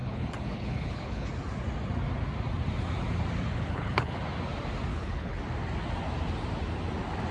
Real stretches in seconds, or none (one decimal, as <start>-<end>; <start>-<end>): 1.3-3.5; 4.2-4.9; 5.4-7.3